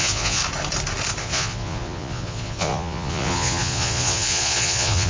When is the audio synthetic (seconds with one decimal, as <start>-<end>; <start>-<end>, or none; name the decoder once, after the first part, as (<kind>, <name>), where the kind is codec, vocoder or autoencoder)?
0.0-0.4 (vocoder, Vocos); 1.2-5.1